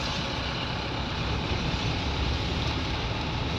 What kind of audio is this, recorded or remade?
recorded